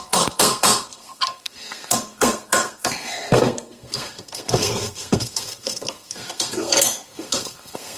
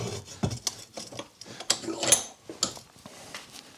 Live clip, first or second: second